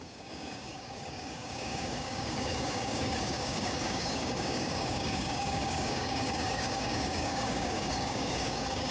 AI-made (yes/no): yes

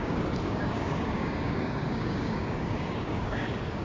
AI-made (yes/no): yes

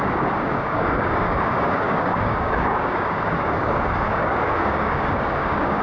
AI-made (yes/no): yes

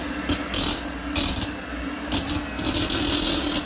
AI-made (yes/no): no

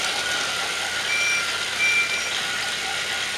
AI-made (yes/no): no